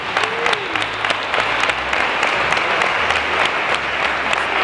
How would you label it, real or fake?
real